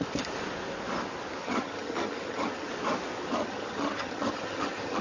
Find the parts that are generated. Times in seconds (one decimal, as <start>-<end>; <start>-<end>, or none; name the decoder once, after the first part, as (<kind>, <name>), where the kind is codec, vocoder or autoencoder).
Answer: 1.4-2.7 (vocoder, HiFi-GAN); 3.3-5.0